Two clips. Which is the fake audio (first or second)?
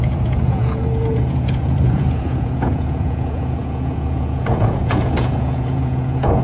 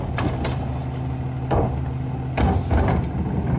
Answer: first